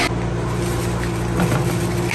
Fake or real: real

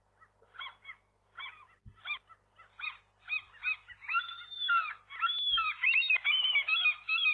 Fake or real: real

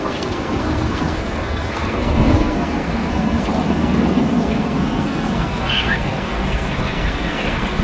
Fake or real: fake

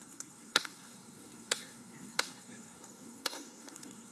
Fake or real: fake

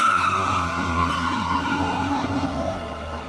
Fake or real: fake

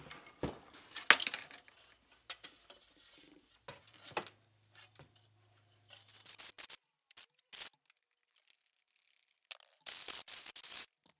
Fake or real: real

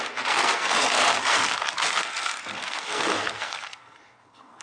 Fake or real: fake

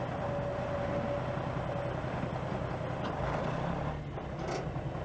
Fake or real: real